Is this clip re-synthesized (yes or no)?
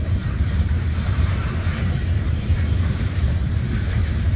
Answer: yes